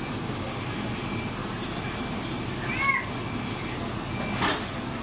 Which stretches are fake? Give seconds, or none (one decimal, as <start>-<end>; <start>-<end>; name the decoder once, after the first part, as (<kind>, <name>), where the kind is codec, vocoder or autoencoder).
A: 1.4-2.1 (vocoder, BigVGAN v2)